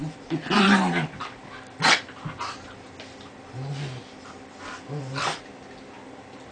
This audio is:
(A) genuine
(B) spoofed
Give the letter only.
A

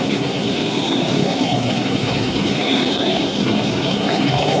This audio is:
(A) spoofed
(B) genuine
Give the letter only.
A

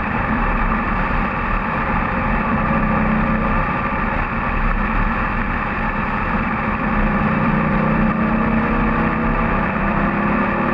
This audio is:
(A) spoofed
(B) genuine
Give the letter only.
A